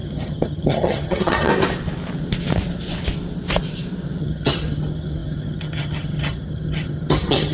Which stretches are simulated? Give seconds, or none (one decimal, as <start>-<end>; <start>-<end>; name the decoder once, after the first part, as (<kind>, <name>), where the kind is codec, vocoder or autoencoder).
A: 0.0-1.5 (vocoder, HiFi-GAN); 4.2-7.5